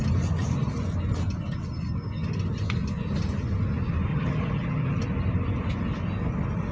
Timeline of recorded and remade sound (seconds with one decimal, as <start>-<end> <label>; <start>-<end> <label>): 0.0-4.1 recorded; 4.1-5.0 remade; 5.0-6.7 recorded